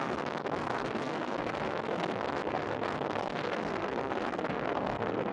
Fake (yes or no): yes